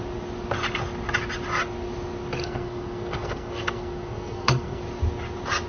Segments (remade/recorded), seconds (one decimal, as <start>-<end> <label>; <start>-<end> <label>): 0.0-2.4 recorded; 2.4-4.8 remade; 4.8-5.7 recorded